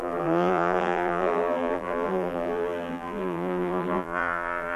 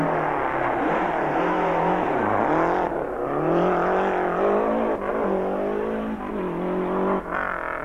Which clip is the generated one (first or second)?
first